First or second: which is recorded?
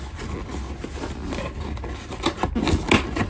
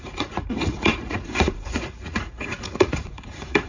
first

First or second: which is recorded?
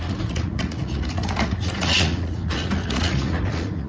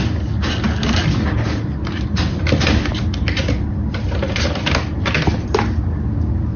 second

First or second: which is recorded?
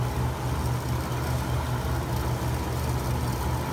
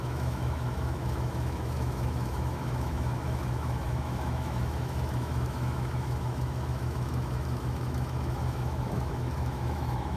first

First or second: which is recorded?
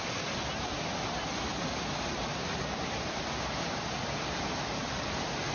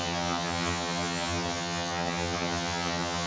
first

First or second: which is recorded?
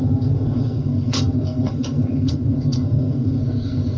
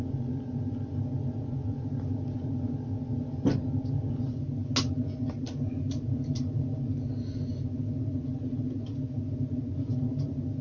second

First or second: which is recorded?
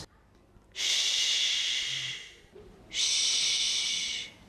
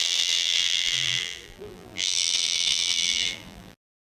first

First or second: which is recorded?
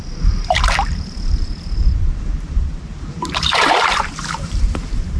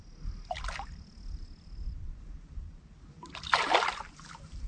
second